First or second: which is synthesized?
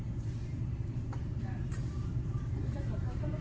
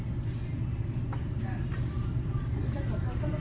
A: first